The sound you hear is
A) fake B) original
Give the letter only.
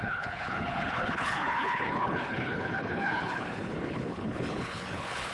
A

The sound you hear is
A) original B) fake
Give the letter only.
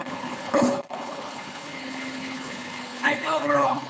B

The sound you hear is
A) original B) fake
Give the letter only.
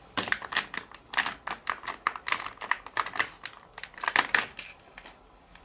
A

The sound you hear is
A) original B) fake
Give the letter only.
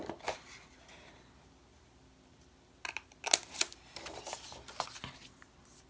A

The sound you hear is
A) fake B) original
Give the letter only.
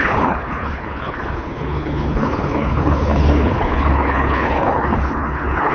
A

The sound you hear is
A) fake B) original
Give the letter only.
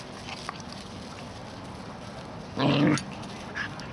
B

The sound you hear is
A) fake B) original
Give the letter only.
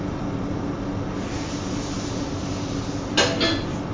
B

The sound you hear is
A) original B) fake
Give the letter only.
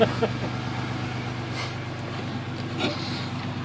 A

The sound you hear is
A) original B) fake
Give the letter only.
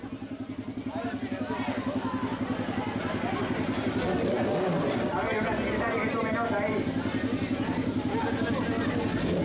A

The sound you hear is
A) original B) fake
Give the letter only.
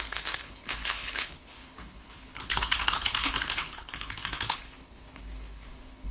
B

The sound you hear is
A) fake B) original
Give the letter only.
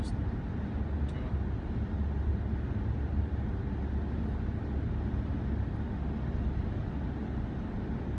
B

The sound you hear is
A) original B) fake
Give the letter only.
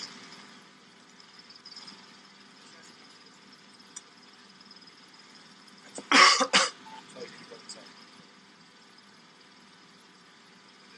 A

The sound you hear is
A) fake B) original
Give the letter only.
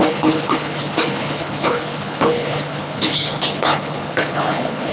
A